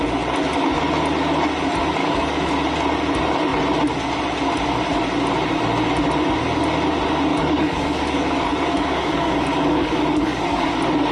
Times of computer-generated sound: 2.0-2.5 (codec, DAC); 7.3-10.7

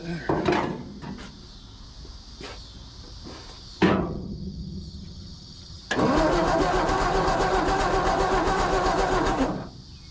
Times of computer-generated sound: 4.0-5.8 (vocoder, HiFi-GAN)

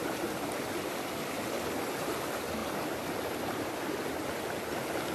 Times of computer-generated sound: none